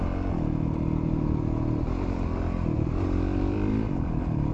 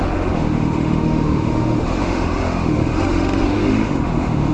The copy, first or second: second